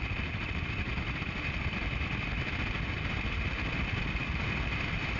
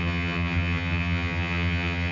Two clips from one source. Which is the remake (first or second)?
second